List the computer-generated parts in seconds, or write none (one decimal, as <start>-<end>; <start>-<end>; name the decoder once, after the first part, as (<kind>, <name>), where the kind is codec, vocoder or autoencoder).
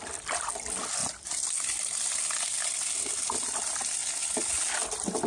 none